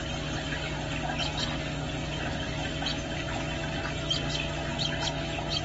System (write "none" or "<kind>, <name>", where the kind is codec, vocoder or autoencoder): none